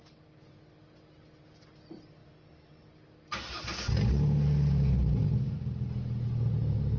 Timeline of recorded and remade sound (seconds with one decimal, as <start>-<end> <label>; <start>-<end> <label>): 0.0-7.0 recorded

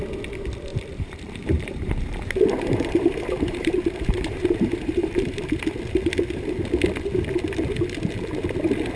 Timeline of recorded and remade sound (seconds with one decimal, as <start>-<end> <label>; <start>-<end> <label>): 0.0-0.7 recorded; 0.7-5.3 remade; 5.3-9.0 recorded

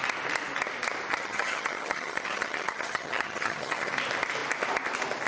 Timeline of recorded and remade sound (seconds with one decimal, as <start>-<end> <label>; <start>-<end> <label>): 0.0-1.1 recorded; 1.1-3.9 remade; 3.9-5.3 recorded

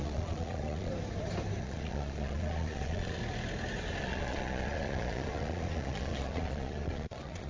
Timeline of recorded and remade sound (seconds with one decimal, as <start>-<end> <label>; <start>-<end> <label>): 0.0-0.9 remade; 0.9-1.6 recorded; 1.6-3.2 remade; 3.2-4.0 recorded; 4.0-7.5 remade

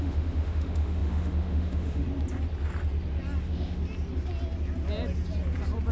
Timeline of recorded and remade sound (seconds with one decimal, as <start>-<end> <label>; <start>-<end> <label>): 0.0-2.0 remade; 2.0-3.4 recorded; 3.4-3.8 remade; 3.8-5.9 recorded

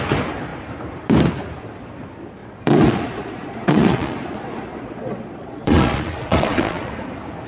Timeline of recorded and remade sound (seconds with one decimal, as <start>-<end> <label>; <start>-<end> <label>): 0.0-2.4 recorded; 2.4-6.9 remade; 6.9-7.5 recorded

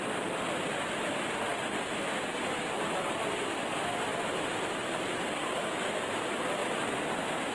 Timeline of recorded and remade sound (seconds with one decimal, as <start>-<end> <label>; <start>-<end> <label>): 0.0-4.1 recorded; 4.1-5.5 remade; 5.5-6.6 recorded; 6.6-7.1 remade; 7.1-7.5 recorded